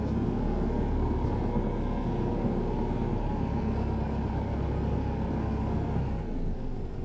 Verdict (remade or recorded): remade